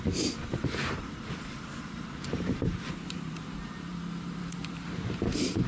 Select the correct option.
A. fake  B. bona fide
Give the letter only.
A